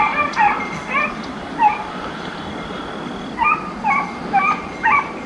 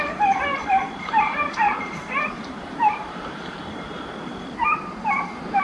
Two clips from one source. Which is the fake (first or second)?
second